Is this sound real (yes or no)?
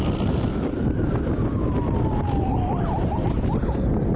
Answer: no